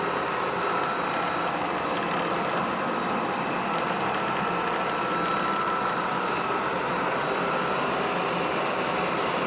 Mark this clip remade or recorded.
recorded